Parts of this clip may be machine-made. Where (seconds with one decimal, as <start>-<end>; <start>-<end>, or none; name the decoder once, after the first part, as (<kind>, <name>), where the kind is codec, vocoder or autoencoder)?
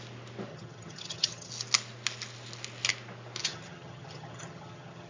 0.5-1.5 (vocoder, HiFi-GAN); 3.4-5.1